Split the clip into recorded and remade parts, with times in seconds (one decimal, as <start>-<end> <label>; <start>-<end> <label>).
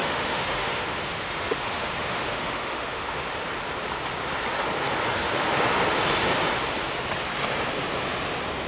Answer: 0.0-3.5 remade; 3.5-5.1 recorded; 5.1-5.7 remade; 5.7-8.7 recorded